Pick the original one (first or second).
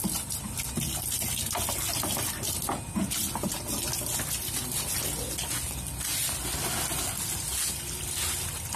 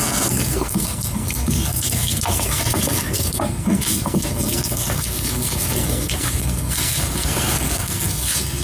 first